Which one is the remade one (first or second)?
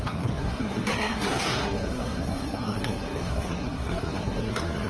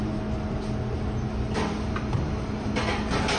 first